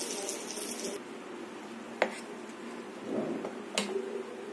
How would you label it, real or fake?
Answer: real